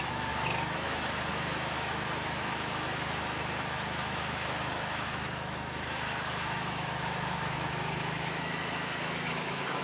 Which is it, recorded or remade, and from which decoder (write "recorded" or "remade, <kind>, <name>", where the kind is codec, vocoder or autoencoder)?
remade, autoencoder, DAC-VAE